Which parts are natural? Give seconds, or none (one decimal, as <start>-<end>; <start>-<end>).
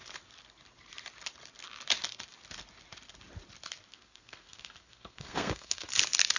0.0-3.9; 5.9-6.4